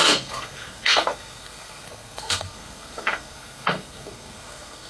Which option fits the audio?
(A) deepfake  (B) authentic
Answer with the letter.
A